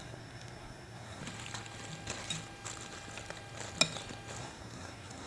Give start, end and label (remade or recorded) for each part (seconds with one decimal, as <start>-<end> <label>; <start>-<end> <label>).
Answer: 0.0-1.2 remade; 1.2-4.4 recorded; 4.4-5.3 remade